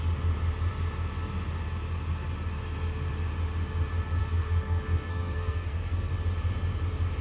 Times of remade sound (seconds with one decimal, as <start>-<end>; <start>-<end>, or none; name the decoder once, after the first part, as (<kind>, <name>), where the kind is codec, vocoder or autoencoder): 4.2-6.1 (codec, SNAC)